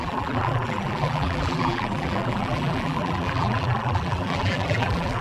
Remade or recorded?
remade